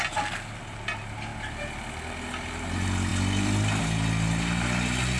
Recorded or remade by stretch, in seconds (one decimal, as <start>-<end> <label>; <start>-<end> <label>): 0.0-5.2 recorded